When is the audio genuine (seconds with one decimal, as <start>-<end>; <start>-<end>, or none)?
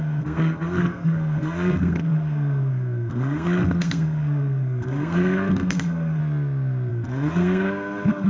6.2-6.9